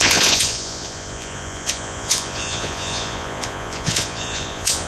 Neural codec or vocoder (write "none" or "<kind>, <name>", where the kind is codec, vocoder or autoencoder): vocoder, Vocos